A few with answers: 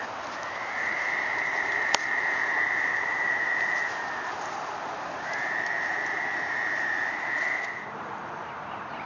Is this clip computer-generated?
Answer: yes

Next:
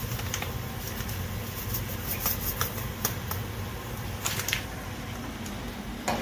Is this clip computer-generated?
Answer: no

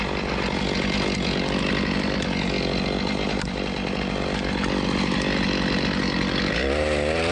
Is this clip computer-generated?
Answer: yes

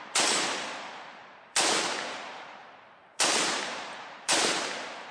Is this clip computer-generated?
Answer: yes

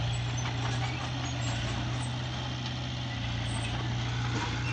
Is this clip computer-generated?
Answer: no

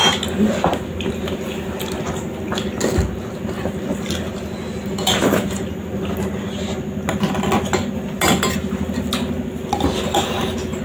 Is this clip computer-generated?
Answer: no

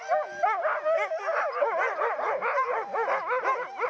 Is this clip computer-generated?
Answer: no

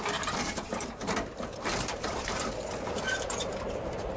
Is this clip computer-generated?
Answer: yes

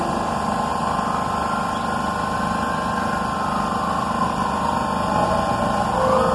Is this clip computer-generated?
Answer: no